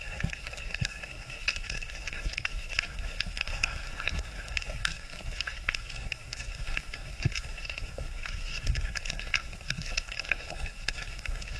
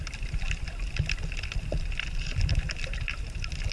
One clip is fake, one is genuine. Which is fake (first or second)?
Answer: first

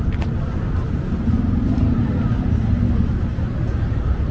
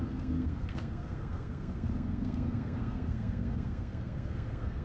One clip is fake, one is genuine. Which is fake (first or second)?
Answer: second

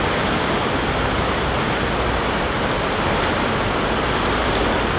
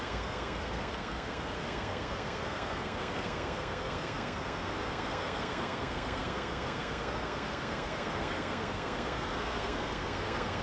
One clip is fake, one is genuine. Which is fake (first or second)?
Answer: second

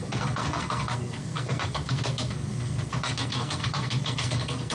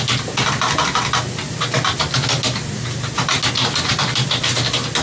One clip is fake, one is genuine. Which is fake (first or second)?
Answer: first